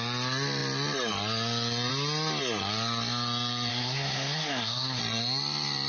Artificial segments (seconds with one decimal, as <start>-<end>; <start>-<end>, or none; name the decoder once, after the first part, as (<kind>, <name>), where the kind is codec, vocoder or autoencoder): 3.7-5.0 (codec, SNAC)

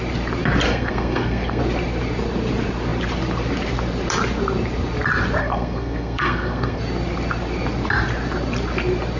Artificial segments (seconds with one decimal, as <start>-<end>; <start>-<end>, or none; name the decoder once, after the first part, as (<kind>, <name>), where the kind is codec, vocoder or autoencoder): 0.7-1.6 (codec, SNAC); 5.4-6.8

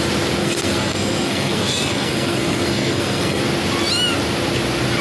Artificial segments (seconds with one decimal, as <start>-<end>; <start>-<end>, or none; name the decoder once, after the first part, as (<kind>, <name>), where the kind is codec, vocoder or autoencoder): 0.4-3.4 (codec, SNAC)

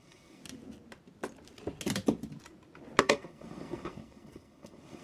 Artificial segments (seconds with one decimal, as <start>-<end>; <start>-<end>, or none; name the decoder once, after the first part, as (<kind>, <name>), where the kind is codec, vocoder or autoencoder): 0.0-0.4 (codec, SNAC); 3.0-5.0